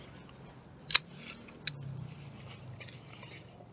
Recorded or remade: recorded